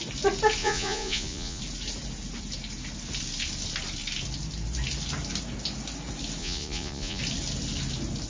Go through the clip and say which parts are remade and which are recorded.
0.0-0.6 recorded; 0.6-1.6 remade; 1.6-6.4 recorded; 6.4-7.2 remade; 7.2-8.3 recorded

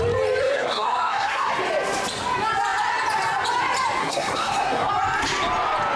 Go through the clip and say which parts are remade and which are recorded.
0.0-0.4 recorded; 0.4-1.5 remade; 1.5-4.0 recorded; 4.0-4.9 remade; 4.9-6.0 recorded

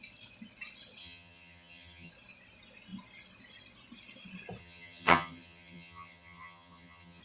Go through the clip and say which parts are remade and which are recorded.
0.0-1.0 recorded; 1.0-2.1 remade; 2.1-4.6 recorded; 4.6-7.2 remade